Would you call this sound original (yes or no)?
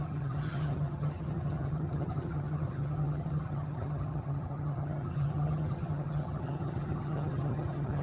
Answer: no